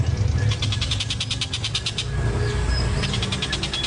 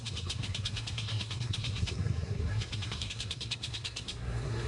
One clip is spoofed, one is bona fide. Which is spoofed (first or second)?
second